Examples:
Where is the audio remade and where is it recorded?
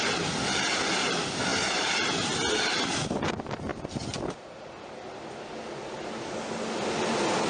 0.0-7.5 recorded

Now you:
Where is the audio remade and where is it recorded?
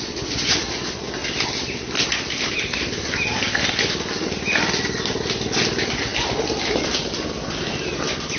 0.0-8.4 recorded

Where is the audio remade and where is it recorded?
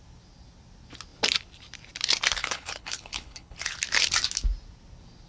0.0-2.4 recorded; 2.4-3.8 remade; 3.8-5.3 recorded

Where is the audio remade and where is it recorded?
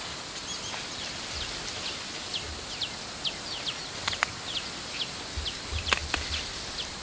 0.0-7.0 recorded